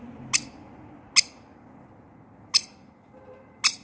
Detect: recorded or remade recorded